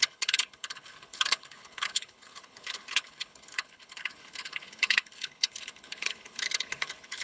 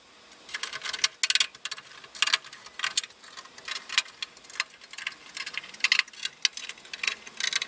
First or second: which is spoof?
first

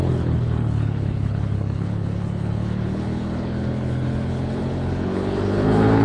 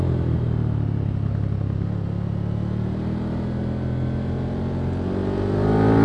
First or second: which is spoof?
first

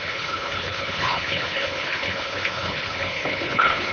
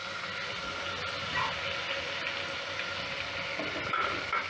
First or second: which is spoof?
first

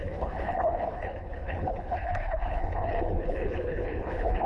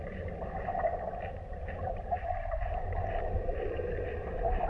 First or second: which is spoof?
first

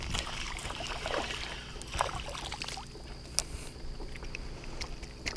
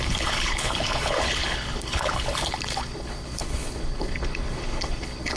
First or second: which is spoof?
second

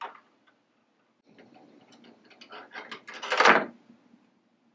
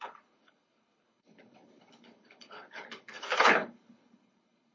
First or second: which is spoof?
second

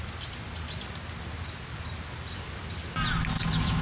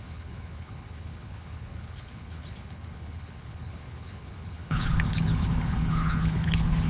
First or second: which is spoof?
second